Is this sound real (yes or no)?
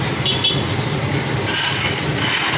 yes